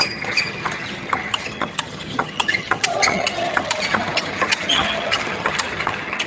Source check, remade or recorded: remade